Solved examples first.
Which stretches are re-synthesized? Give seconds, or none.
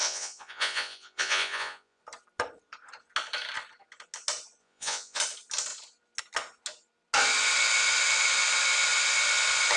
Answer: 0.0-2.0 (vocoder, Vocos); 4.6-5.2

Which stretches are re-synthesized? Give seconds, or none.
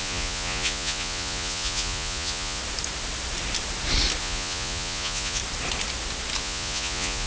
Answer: 0.0-2.6 (vocoder, Vocos); 4.2-5.4; 6.4-7.3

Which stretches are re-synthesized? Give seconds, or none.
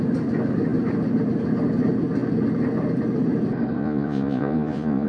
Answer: 3.8-5.1 (vocoder, Vocos)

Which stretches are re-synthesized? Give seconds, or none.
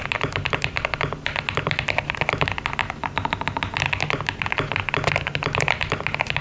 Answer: none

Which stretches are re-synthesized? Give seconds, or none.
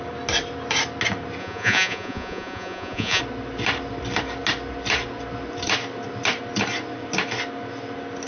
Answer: 1.4-3.2 (vocoder, Vocos)